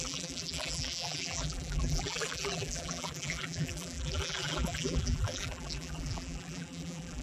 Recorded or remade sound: remade